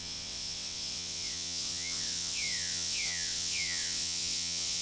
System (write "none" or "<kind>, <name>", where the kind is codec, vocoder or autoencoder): vocoder, WaveNeXt